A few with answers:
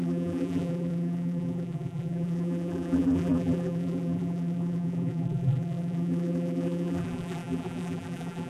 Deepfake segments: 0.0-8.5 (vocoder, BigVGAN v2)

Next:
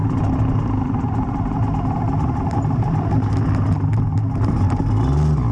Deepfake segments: 0.0-3.3 (vocoder, BigVGAN v2)

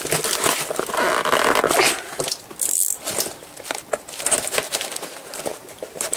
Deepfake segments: 5.5-6.2 (vocoder, BigVGAN v2)

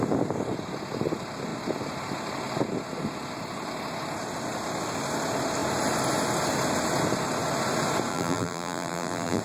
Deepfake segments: 8.1-9.4 (vocoder, BigVGAN v2)